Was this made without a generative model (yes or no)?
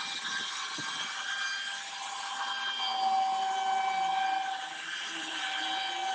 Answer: yes